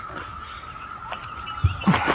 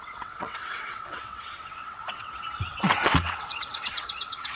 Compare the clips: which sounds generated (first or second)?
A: second